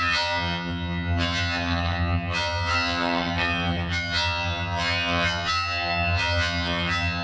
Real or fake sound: fake